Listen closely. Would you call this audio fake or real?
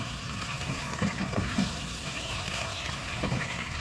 fake